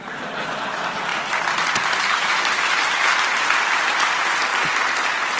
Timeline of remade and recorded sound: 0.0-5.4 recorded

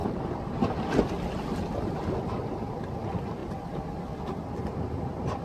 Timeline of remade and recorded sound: 0.0-5.4 recorded

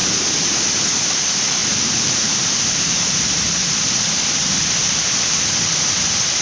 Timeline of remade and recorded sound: 0.0-6.4 remade

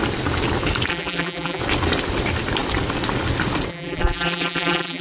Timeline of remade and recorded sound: 0.0-0.9 recorded; 0.9-1.6 remade; 1.6-3.7 recorded; 3.7-5.0 remade

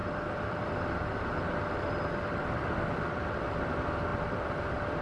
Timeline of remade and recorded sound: 0.0-3.0 recorded; 3.0-5.0 remade

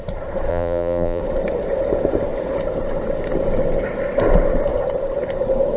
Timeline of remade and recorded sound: 0.0-0.5 recorded; 0.5-1.2 remade; 1.2-5.8 recorded

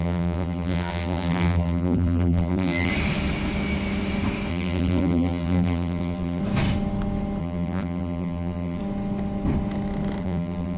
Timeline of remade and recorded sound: 0.0-2.9 remade; 2.9-4.5 recorded; 4.5-6.4 remade; 6.4-7.4 recorded; 7.4-8.8 remade; 8.8-10.2 recorded; 10.2-10.8 remade

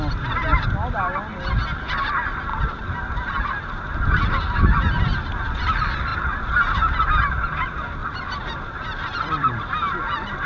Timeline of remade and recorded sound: 0.0-8.0 recorded; 8.0-9.6 remade; 9.6-10.5 recorded